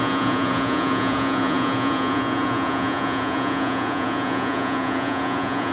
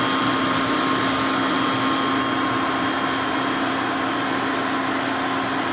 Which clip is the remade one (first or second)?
first